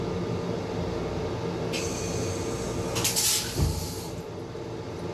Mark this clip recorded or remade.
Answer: recorded